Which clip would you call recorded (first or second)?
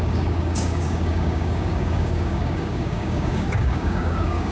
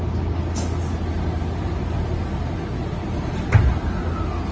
second